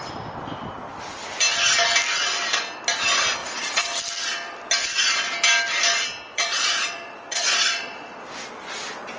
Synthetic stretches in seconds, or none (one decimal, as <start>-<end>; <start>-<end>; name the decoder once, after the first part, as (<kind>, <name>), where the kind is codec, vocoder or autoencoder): 3.4-4.0 (vocoder, Vocos); 6.3-8.2